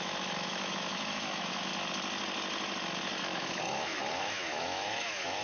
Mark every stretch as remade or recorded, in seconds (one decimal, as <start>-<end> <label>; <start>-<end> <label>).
0.0-1.7 remade; 1.7-3.2 recorded; 3.2-5.4 remade